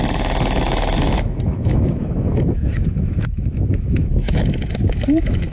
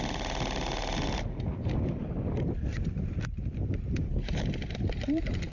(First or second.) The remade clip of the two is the first